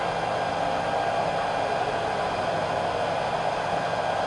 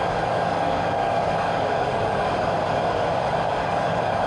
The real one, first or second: first